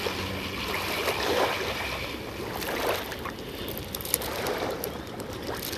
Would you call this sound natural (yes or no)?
yes